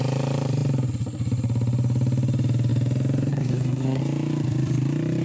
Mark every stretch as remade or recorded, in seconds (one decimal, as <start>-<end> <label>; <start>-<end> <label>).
0.0-3.3 recorded; 3.3-4.0 remade; 4.0-5.2 recorded